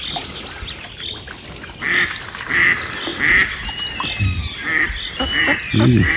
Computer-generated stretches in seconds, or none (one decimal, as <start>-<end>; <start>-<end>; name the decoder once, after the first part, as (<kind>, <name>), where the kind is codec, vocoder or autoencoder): none